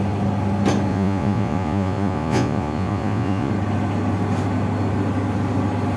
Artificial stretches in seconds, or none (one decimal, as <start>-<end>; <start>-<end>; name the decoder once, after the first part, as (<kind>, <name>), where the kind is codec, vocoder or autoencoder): 0.9-3.5 (vocoder, Vocos)